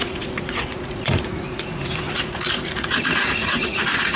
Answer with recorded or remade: remade